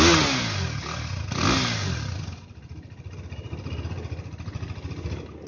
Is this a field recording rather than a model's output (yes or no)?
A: yes